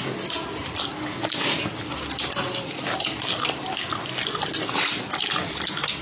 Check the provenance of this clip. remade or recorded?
recorded